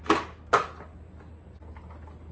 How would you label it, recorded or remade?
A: recorded